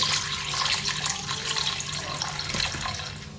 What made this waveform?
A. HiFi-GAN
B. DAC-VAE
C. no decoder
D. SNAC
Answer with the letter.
C